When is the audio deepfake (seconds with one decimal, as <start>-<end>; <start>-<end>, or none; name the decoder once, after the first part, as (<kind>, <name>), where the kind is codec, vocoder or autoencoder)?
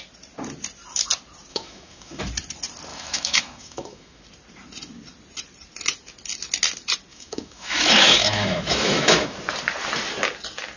1.5-2.2 (autoencoder, DAC-VAE); 2.9-4.2; 7.1-9.4